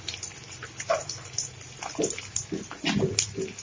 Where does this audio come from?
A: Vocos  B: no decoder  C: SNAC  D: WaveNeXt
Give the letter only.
B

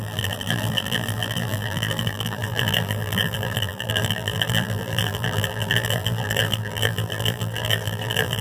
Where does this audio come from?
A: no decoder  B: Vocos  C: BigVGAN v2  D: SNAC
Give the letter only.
C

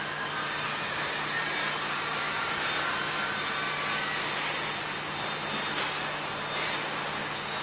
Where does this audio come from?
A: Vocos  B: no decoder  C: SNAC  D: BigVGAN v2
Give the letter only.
B